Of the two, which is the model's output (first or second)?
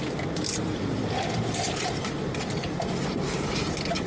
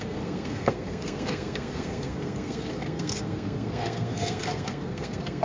second